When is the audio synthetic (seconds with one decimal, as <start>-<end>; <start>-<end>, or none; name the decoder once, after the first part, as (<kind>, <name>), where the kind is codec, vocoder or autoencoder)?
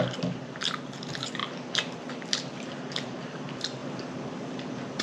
none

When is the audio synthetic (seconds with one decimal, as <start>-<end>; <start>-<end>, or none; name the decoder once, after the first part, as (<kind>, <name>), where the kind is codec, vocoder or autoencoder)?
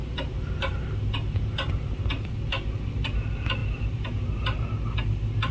3.6-4.2 (vocoder, BigVGAN v2)